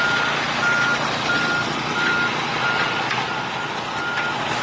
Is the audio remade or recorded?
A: recorded